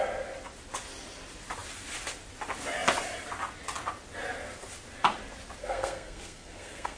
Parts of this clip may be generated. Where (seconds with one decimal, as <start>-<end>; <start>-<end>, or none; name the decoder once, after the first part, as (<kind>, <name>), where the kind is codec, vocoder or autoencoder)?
5.6-7.0 (codec, SNAC)

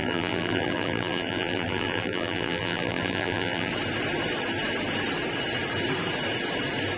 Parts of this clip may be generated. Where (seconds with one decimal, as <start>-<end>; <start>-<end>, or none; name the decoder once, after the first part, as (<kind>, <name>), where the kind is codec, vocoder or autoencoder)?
0.0-3.7 (vocoder, BigVGAN v2)

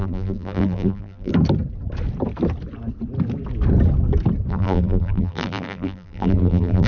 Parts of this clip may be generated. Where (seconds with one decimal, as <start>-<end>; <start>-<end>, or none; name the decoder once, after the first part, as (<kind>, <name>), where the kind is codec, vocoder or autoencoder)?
0.0-1.3 (vocoder, BigVGAN v2); 4.5-6.9

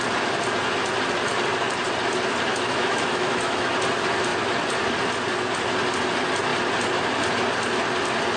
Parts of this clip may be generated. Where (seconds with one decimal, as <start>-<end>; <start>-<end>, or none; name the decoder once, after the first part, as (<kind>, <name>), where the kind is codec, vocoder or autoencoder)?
2.5-3.7 (autoencoder, DAC-VAE)

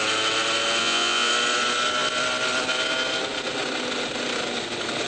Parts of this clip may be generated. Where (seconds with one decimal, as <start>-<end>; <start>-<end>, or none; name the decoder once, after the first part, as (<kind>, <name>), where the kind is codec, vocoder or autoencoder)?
0.8-1.3 (vocoder, Vocos)

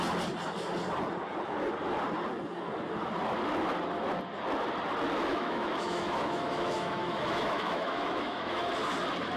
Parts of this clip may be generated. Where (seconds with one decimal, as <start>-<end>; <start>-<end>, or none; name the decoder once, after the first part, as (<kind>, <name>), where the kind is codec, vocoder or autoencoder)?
5.3-8.7 (autoencoder, DAC-VAE)

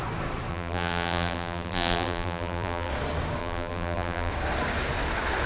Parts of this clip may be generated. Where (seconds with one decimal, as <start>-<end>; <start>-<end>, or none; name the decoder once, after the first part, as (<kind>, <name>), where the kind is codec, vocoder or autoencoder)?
0.5-2.9 (vocoder, BigVGAN v2); 3.4-4.3

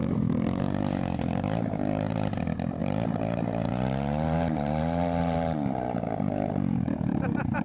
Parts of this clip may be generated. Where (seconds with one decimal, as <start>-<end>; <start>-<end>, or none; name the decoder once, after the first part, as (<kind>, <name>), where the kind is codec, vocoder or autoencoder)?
0.0-2.4 (vocoder, BigVGAN v2); 2.8-7.6